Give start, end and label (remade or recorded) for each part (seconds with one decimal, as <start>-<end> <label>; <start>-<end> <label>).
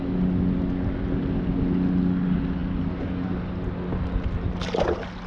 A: 0.0-5.3 recorded